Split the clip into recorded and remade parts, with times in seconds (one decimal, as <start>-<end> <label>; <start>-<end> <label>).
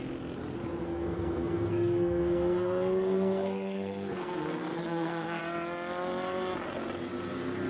0.0-0.8 recorded; 0.8-5.4 remade; 5.4-7.7 recorded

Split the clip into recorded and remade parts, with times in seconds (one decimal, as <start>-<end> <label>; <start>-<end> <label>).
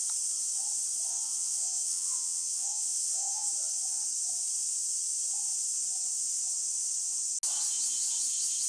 0.0-1.1 recorded; 1.1-3.5 remade; 3.5-8.7 recorded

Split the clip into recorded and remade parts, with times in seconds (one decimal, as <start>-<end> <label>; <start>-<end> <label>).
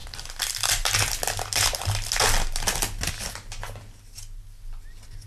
0.0-5.3 recorded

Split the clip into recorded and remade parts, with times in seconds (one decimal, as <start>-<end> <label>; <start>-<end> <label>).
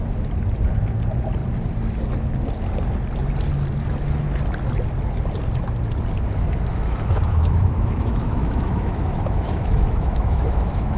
0.0-6.7 recorded; 6.7-11.0 remade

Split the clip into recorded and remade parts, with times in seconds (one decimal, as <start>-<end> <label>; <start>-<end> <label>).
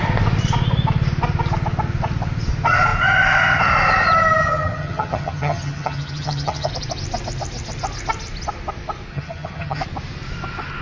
0.0-4.4 recorded; 4.4-6.7 remade; 6.7-9.1 recorded; 9.1-9.8 remade; 9.8-10.8 recorded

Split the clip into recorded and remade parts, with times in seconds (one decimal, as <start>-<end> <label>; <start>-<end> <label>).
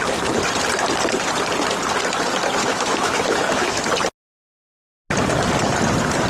0.0-2.6 recorded; 2.6-3.8 remade; 3.8-6.3 recorded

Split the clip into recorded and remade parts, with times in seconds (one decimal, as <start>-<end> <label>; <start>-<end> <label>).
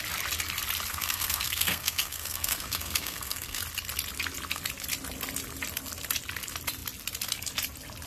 0.0-0.9 recorded; 0.9-3.6 remade; 3.6-8.1 recorded